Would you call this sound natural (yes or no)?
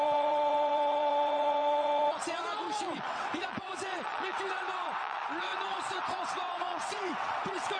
no